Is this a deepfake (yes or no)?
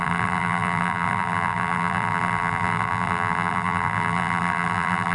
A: yes